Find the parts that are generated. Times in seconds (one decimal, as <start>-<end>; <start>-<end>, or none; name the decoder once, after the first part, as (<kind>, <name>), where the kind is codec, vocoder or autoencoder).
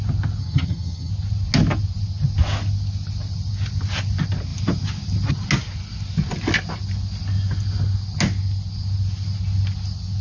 0.4-1.1 (vocoder, HiFi-GAN)